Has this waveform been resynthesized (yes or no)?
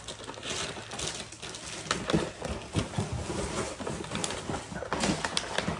no